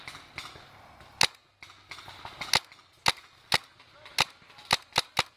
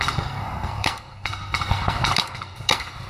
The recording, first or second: first